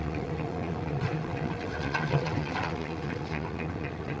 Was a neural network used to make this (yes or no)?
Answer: yes